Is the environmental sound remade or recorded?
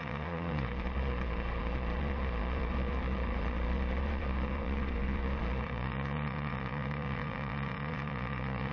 remade